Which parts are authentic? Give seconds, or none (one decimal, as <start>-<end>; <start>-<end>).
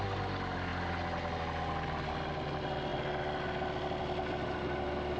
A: 0.0-5.2